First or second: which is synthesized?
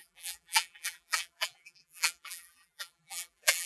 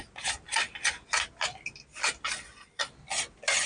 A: first